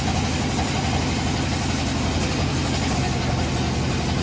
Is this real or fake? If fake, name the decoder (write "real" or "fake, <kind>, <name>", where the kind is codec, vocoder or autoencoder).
real